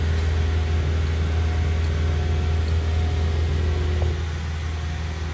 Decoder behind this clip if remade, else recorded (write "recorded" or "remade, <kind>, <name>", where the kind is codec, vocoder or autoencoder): recorded